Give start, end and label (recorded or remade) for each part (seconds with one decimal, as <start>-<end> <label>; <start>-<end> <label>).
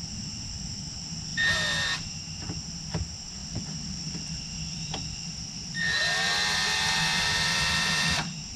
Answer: 0.0-1.3 recorded; 1.3-2.2 remade; 2.2-3.4 recorded; 3.4-8.6 remade